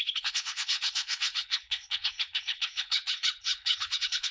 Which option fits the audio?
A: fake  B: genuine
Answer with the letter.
A